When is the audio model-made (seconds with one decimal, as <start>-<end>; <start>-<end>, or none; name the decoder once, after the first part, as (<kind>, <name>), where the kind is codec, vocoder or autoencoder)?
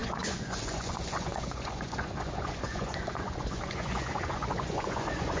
0.0-5.4 (vocoder, Vocos)